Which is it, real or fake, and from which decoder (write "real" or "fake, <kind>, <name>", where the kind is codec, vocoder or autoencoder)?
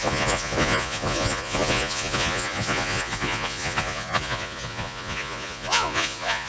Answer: fake, vocoder, Vocos